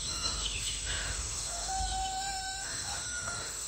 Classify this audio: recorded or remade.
remade